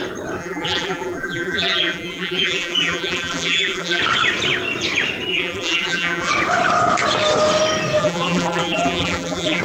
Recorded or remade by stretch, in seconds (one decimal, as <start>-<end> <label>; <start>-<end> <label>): 0.0-0.4 recorded; 0.4-4.0 remade; 4.0-5.3 recorded; 5.3-6.3 remade; 6.3-8.0 recorded; 8.0-9.6 remade